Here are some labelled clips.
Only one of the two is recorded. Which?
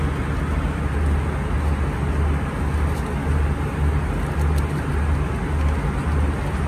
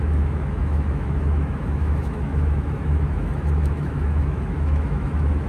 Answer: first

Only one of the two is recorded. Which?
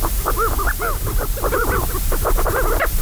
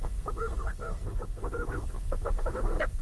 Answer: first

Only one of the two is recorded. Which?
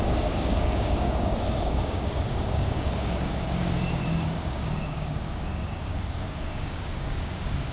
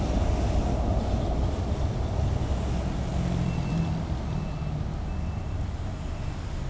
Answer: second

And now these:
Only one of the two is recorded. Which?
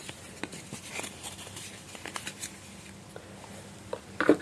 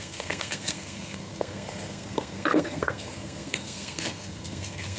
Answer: first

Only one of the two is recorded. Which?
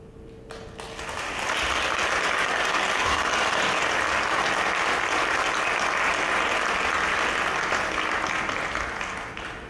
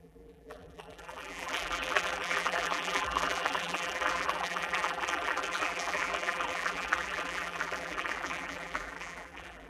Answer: first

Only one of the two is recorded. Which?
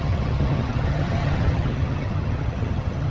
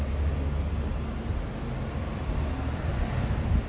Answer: second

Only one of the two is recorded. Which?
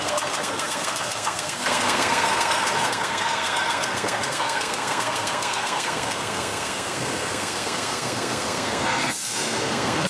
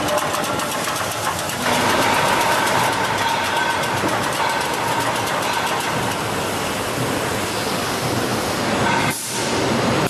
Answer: second